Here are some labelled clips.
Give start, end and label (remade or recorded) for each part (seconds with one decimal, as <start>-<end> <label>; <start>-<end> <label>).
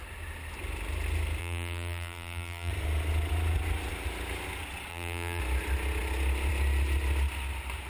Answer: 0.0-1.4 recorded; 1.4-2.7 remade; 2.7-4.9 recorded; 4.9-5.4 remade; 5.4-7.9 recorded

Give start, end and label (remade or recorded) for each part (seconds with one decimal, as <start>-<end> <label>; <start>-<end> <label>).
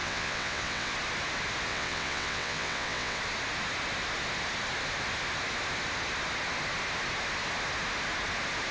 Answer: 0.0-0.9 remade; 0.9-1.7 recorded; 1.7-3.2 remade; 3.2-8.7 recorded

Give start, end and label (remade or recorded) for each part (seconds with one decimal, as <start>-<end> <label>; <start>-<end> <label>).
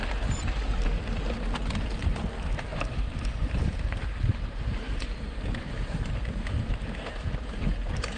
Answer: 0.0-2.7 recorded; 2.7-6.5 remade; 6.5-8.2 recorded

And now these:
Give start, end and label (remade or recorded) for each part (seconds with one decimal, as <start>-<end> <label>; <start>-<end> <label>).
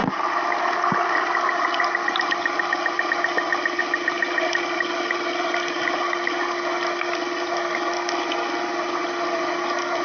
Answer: 0.0-10.0 recorded